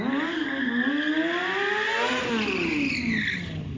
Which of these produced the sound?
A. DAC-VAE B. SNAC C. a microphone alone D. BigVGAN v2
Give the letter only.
C